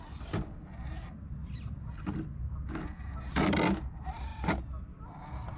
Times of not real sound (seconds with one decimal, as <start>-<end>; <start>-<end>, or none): none